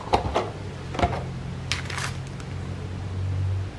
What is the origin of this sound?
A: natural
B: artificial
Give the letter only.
A